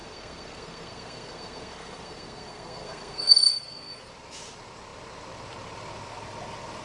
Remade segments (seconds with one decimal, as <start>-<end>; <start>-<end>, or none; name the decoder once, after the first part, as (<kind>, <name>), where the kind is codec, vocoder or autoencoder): 0.0-4.1 (codec, SNAC)